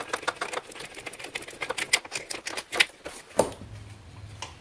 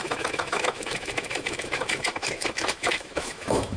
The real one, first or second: first